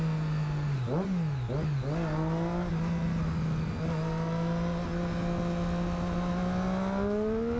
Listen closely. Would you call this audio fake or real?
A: real